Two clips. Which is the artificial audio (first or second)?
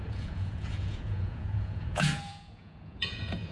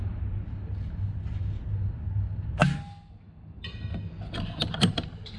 first